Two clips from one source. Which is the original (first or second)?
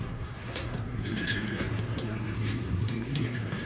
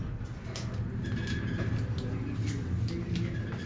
second